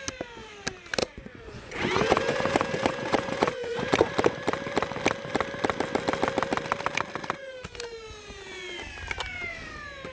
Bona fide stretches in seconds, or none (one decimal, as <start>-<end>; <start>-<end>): 0.0-1.0; 4.1-10.1